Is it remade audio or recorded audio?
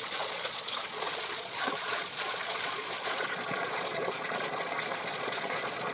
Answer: remade